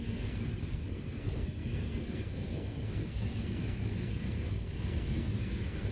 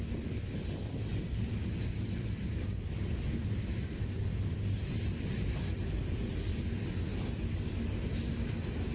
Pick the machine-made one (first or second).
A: first